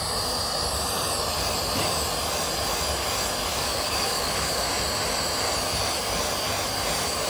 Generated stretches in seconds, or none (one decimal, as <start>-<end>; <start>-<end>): 3.5-4.7